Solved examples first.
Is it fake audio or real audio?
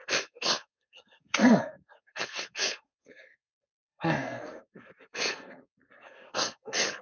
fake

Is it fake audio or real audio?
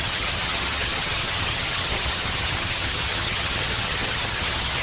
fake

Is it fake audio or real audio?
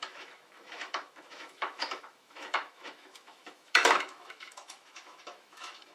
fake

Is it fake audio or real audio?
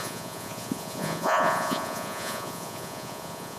fake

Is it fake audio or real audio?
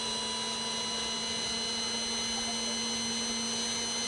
real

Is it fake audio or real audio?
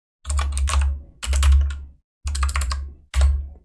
real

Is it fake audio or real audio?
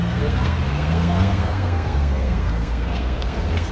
fake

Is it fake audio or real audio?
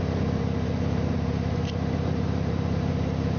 fake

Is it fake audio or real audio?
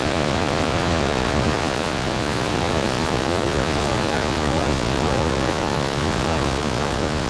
fake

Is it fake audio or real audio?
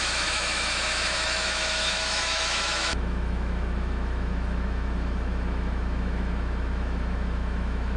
fake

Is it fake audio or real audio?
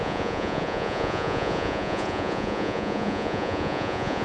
fake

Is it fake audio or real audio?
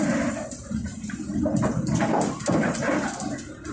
real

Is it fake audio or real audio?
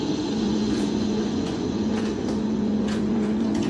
fake